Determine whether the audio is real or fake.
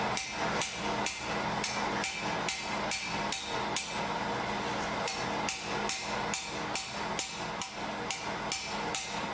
real